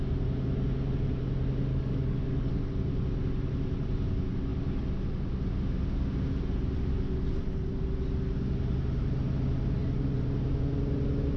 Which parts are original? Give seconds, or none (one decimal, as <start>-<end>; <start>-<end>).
0.0-1.7; 2.5-11.4